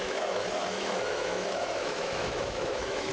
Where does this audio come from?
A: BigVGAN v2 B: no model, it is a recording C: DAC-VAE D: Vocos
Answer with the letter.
C